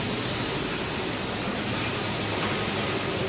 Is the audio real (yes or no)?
yes